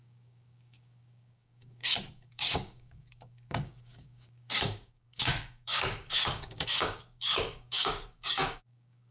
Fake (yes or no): yes